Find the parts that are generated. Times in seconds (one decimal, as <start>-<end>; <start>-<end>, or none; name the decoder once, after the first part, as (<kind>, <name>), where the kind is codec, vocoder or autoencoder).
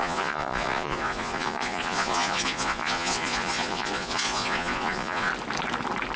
0.0-5.3 (vocoder, Vocos)